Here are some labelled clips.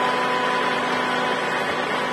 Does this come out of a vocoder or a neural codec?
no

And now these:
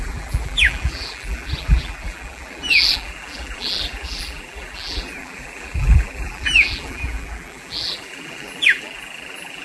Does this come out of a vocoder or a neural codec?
yes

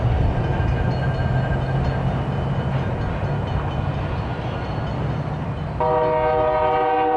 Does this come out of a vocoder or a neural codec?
no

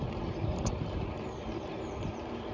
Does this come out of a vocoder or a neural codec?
yes